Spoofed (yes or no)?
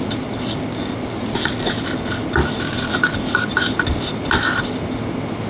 no